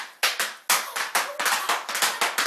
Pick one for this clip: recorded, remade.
recorded